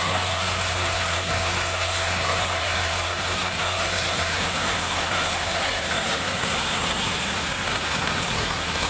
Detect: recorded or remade remade